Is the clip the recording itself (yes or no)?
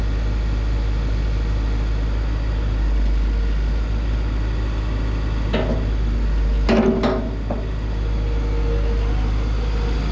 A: yes